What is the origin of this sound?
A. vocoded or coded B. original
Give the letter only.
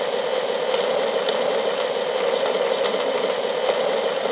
B